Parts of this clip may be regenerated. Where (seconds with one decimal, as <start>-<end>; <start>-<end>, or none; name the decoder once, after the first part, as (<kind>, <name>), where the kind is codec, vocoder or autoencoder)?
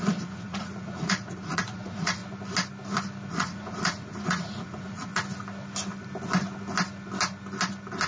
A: 0.0-2.2 (vocoder, Vocos); 3.3-5.1